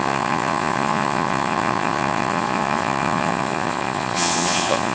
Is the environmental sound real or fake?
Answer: fake